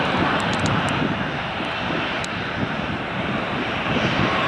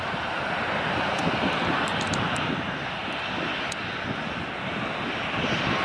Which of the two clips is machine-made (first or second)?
first